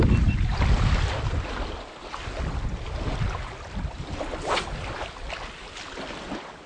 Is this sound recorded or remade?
recorded